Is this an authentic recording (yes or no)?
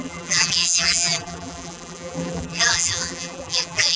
no